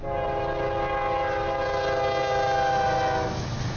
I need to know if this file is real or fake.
real